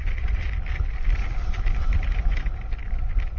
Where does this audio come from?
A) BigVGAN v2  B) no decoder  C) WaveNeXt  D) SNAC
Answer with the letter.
B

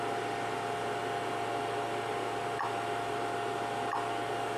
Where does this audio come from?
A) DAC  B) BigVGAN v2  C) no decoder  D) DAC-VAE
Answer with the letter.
C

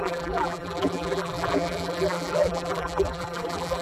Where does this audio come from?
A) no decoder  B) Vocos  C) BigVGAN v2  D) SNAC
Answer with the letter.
C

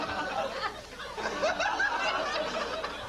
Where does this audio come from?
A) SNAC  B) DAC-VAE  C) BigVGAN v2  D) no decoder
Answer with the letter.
D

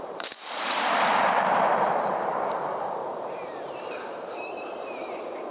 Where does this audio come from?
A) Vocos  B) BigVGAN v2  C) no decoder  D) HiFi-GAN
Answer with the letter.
B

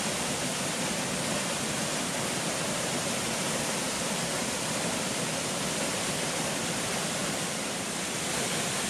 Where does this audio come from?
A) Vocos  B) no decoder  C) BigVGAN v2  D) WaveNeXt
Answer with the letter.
C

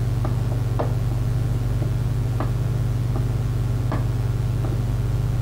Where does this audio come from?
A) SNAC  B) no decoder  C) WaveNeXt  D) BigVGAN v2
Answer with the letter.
B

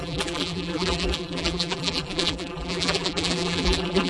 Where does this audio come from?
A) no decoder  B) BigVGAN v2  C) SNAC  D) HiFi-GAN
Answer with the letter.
B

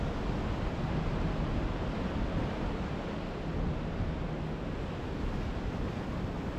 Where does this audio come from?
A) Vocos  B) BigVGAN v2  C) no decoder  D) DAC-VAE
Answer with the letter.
C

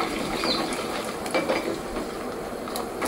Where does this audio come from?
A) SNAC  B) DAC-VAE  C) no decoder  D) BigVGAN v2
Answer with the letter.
D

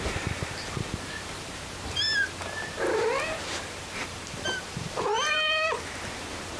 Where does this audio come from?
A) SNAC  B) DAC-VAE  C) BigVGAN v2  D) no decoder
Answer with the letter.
C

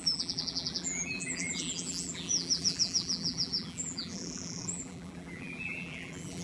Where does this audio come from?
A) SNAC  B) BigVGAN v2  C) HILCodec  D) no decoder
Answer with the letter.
B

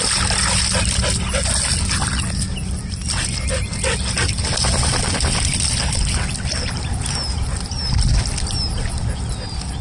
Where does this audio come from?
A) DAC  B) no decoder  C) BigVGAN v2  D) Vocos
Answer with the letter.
B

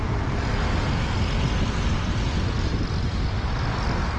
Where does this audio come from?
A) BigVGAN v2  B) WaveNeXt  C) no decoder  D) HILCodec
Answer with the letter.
C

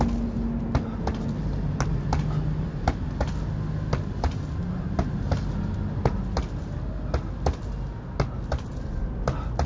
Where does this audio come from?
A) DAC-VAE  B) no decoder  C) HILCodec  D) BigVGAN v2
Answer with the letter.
B